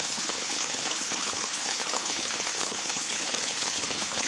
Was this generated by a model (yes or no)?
yes